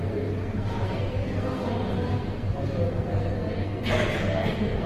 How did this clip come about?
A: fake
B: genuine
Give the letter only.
A